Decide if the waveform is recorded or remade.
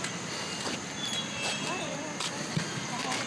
recorded